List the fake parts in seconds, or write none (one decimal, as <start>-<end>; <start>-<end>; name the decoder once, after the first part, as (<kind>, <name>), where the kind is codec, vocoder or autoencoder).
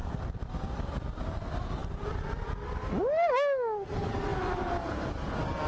1.8-2.5 (vocoder, BigVGAN v2)